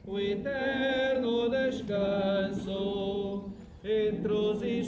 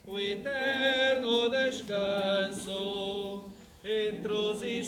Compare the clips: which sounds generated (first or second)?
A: second